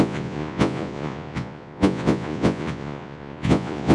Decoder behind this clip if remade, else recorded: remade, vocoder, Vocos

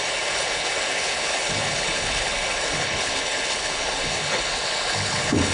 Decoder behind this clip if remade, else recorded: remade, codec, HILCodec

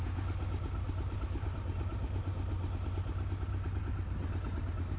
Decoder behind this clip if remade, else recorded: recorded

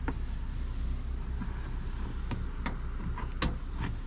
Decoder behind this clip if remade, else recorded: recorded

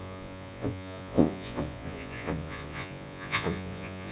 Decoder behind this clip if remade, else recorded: remade, vocoder, Vocos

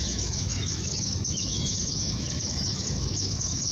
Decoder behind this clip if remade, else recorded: remade, autoencoder, DAC-VAE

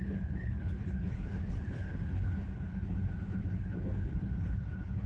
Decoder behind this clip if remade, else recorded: remade, codec, HILCodec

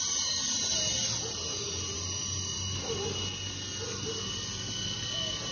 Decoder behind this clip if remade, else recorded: recorded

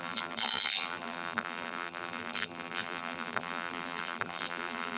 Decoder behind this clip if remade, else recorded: remade, vocoder, BigVGAN v2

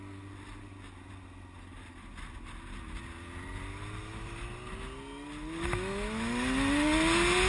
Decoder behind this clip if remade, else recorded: recorded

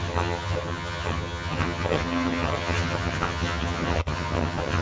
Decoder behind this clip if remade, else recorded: remade, vocoder, HiFi-GAN